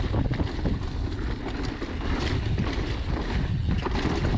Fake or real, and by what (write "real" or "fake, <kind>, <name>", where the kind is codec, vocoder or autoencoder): real